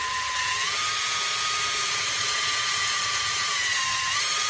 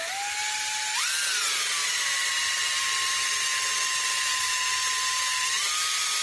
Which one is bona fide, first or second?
second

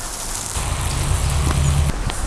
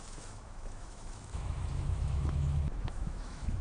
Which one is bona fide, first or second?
first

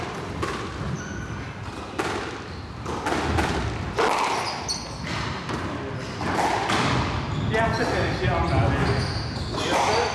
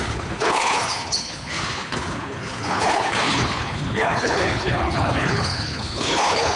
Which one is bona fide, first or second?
first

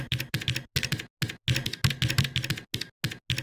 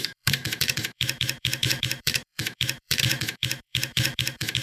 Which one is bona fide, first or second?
first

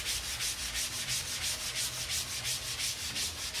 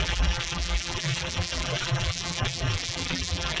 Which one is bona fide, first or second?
first